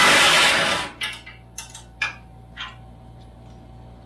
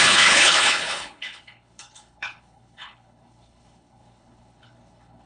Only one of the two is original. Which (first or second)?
first